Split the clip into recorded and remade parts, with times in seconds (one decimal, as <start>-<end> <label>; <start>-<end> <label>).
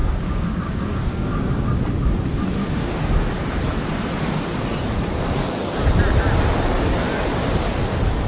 0.0-1.2 remade; 1.2-2.6 recorded; 2.6-3.6 remade; 3.6-8.3 recorded